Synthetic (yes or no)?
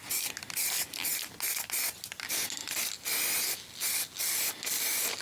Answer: no